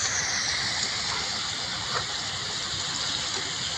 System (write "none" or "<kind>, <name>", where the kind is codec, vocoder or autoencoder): none